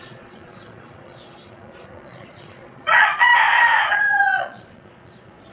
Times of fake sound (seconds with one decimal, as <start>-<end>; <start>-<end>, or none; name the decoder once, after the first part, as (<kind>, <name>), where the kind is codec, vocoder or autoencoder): 0.0-3.3 (vocoder, Vocos); 3.9-5.5